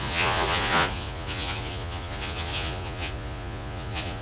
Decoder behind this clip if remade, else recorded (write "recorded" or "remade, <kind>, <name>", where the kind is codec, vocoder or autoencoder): remade, vocoder, Vocos